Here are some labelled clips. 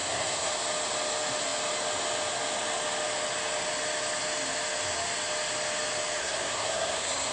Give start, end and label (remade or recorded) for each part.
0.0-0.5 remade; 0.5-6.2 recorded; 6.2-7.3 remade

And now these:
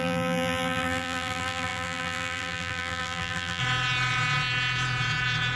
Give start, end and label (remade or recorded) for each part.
0.0-3.6 remade; 3.6-5.6 recorded

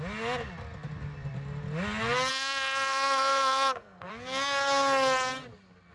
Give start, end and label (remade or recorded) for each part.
0.0-2.3 recorded; 2.3-4.1 remade; 4.1-5.9 recorded

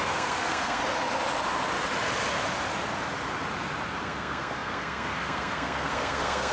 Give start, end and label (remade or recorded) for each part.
0.0-0.8 remade; 0.8-4.0 recorded; 4.0-6.5 remade

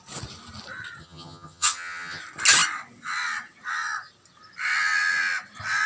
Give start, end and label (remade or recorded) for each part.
0.0-1.0 recorded; 1.0-2.2 remade; 2.2-5.9 recorded

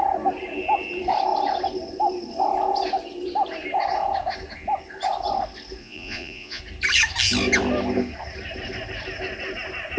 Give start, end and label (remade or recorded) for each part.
0.0-5.8 recorded; 5.8-6.6 remade; 6.6-10.0 recorded